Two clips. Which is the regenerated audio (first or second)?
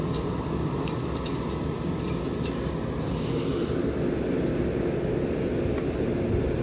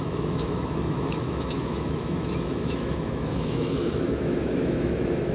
second